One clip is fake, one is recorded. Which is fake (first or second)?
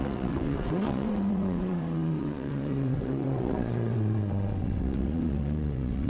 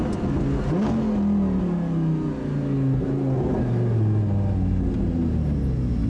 first